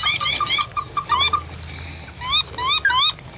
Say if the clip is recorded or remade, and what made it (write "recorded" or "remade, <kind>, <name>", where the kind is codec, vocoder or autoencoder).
recorded